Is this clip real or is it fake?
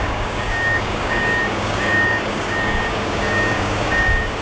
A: fake